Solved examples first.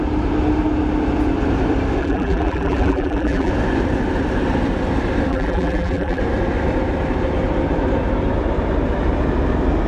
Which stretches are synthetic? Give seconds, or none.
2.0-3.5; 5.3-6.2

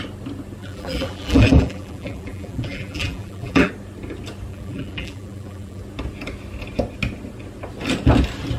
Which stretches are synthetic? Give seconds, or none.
0.6-3.7; 4.5-5.8